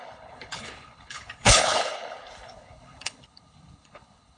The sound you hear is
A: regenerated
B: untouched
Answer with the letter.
A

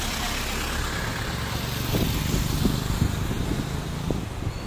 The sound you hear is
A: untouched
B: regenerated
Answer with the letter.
A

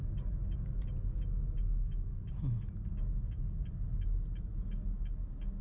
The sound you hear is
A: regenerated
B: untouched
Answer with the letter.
B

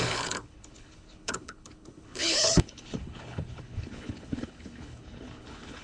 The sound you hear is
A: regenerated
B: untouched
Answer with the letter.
A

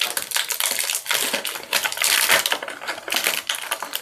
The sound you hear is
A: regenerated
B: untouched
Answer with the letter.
B